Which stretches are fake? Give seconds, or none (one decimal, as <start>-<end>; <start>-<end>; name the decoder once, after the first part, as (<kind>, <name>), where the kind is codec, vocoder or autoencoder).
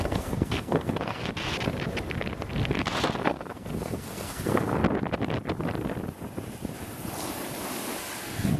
0.0-1.3 (codec, SNAC); 3.2-4.8; 8.2-8.6